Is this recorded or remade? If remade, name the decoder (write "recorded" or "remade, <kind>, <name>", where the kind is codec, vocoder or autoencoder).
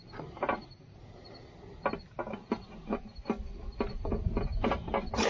recorded